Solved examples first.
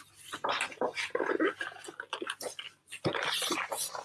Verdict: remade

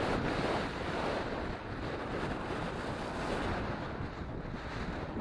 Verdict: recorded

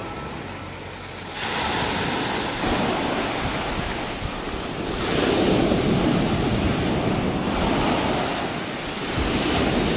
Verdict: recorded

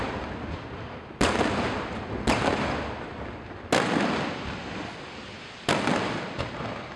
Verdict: recorded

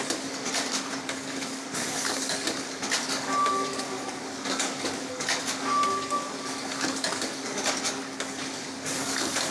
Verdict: remade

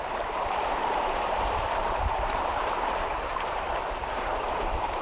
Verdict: remade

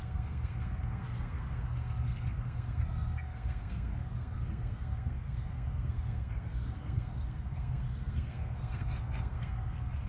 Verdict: remade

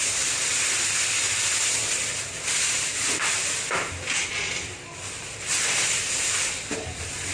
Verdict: recorded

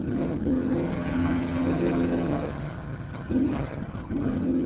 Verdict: remade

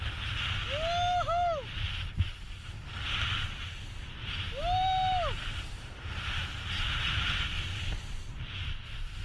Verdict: recorded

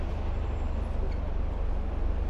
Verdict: recorded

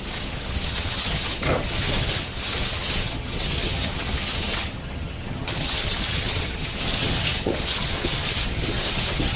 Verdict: remade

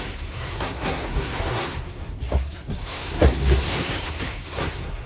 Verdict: remade